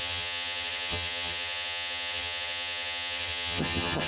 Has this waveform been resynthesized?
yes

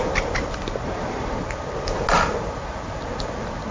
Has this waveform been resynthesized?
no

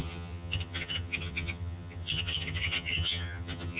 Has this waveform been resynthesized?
yes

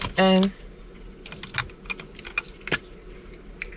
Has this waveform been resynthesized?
no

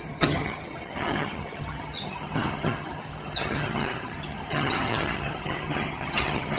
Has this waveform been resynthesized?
yes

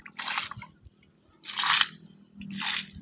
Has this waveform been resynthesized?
no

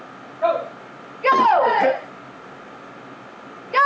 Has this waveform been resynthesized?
no